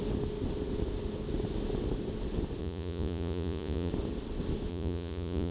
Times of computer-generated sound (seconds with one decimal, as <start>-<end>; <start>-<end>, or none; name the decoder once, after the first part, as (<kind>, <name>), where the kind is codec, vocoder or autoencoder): 2.6-3.9 (vocoder, Vocos); 4.7-5.5